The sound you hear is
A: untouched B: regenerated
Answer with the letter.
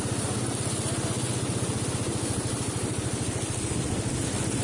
A